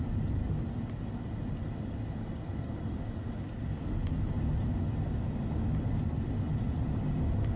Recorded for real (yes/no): yes